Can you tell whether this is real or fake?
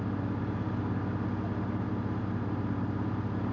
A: real